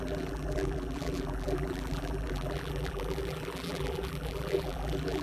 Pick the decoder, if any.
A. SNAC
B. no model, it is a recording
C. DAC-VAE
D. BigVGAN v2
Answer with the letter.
D